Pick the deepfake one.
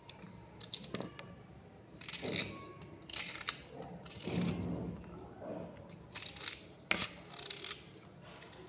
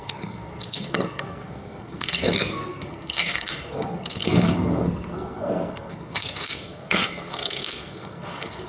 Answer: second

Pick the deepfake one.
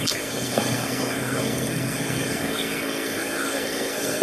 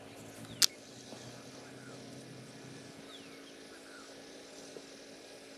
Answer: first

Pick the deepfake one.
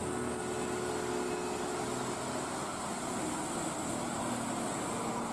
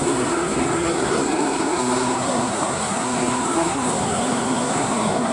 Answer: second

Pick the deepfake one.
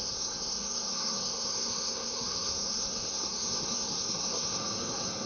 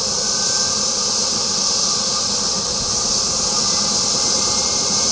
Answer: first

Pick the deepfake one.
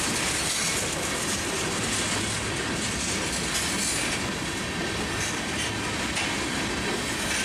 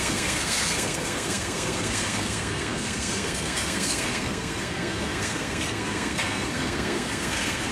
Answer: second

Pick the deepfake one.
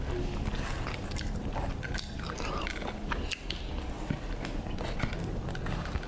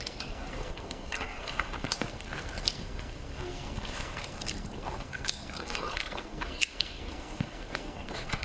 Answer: second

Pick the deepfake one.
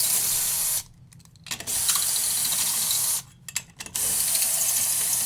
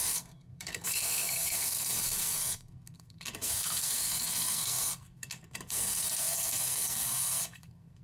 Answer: second